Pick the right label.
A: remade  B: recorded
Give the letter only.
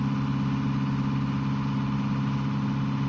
B